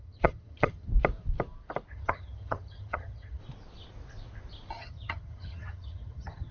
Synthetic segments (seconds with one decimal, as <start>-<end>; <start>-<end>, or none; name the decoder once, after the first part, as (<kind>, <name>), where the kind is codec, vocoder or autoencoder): 0.0-0.9 (vocoder, HiFi-GAN); 1.9-3.4; 4.8-6.5